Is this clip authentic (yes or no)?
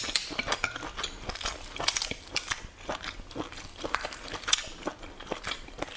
yes